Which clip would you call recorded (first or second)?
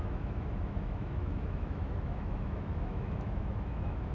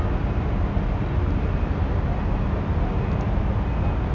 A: second